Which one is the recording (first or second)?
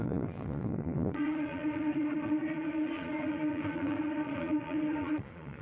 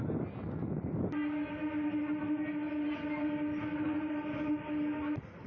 second